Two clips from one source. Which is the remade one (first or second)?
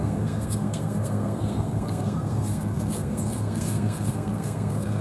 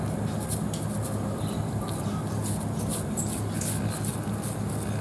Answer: first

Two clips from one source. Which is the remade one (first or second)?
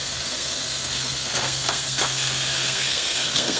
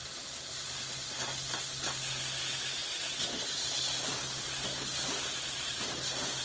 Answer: first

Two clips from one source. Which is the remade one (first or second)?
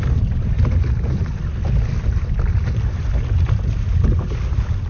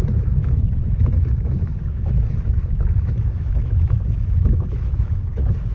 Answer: second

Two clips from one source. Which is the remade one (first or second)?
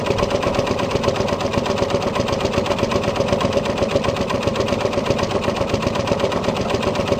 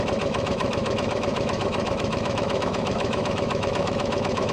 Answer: second